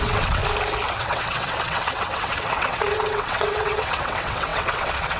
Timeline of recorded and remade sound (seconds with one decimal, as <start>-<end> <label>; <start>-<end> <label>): 0.0-0.4 remade; 0.4-0.9 recorded; 0.9-5.2 remade